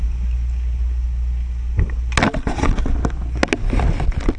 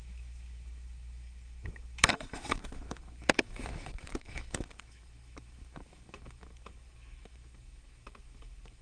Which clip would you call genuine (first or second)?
first